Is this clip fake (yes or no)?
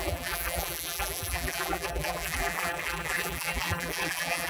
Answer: yes